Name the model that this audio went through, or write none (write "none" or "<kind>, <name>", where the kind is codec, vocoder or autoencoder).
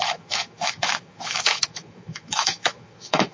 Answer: autoencoder, DAC-VAE